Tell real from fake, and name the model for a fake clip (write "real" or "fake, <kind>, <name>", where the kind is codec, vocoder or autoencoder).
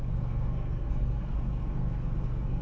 fake, codec, SNAC